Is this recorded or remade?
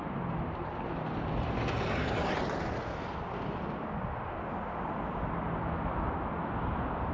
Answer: recorded